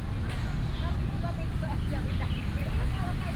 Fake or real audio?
real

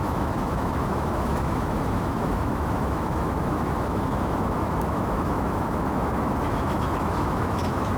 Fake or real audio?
fake